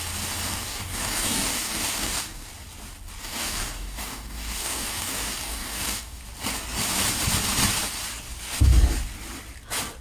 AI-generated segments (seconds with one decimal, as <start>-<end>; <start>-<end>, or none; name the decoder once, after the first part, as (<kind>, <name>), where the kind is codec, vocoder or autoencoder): 0.5-2.5 (codec, DAC); 3.2-6.2